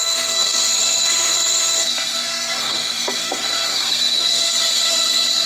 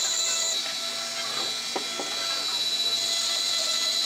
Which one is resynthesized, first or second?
first